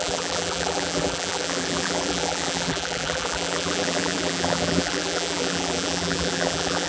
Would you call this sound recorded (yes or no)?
no